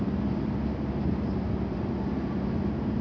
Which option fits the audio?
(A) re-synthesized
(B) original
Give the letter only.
B